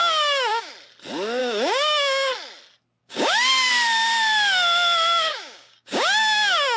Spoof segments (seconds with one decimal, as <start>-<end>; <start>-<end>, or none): 0.0-0.7; 1.4-2.3; 3.0-3.7; 5.3-6.8

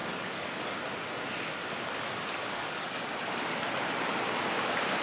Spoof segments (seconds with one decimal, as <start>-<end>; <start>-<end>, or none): 0.0-0.8; 2.4-3.1

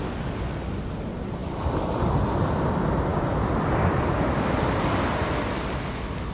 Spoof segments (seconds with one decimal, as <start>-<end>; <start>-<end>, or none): 1.4-2.7; 3.1-4.0

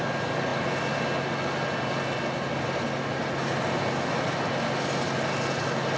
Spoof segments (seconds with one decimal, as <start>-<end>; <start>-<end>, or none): none